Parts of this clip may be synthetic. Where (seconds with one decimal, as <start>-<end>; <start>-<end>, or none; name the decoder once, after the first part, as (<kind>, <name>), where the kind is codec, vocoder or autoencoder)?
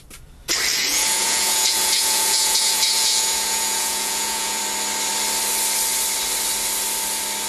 0.7-4.6 (vocoder, Vocos)